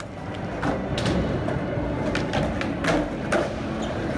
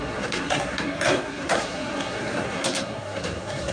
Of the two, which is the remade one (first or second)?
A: second